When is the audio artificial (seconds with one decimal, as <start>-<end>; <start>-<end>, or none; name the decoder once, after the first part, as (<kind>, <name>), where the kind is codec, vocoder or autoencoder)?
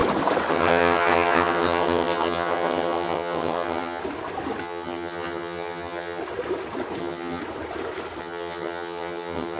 0.5-4.0 (vocoder, HiFi-GAN); 4.6-6.2; 7.0-7.4; 8.2-9.6